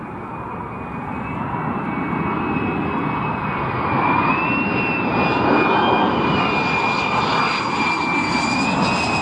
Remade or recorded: recorded